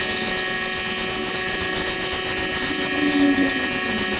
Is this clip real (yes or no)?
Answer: yes